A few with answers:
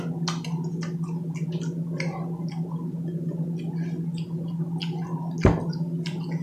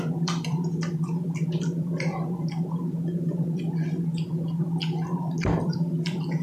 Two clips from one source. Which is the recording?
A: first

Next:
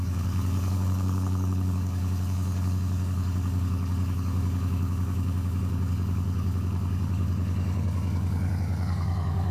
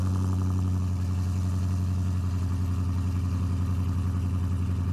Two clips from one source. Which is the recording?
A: second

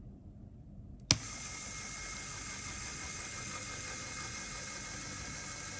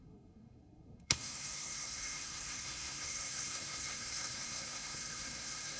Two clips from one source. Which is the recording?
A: first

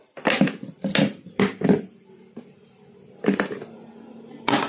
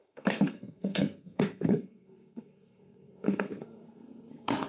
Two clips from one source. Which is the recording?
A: first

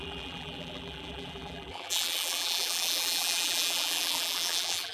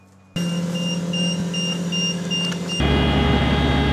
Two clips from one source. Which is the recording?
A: second